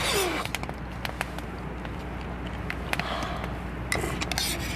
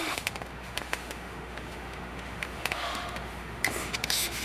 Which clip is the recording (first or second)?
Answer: first